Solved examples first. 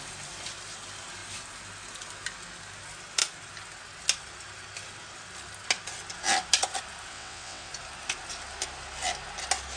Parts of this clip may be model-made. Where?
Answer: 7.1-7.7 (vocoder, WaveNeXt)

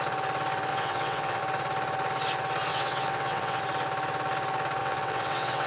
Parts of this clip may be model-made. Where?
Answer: 0.7-1.4 (vocoder, WaveNeXt); 2.7-3.6; 4.8-5.7

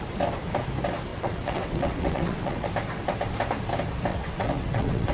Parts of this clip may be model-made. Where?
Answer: 1.1-2.7 (vocoder, WaveNeXt); 4.1-5.1

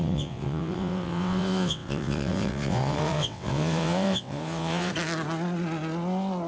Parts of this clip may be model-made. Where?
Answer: 0.0-4.9 (vocoder, WaveNeXt)

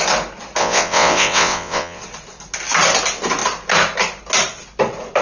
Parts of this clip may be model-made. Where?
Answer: 0.6-2.0 (vocoder, WaveNeXt)

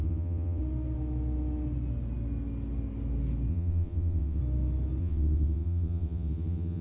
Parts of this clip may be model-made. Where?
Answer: 0.0-0.6 (vocoder, WaveNeXt); 3.5-4.4; 5.0-6.8